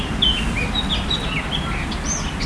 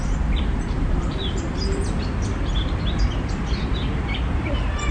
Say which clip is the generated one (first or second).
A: second